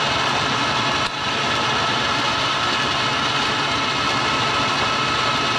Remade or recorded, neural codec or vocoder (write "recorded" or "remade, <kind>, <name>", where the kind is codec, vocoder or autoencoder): remade, vocoder, BigVGAN v2